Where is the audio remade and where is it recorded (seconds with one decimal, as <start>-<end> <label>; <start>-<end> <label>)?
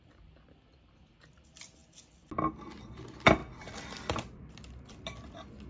0.0-5.7 recorded